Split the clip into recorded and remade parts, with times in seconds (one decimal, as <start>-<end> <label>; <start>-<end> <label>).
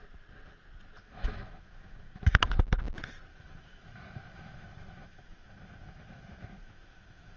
0.0-1.0 recorded; 1.0-2.3 remade; 2.3-3.3 recorded; 3.3-7.4 remade